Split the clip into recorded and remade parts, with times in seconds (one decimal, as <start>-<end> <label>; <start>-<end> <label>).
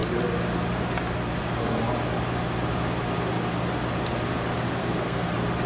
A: 0.0-4.8 recorded; 4.8-5.3 remade; 5.3-5.7 recorded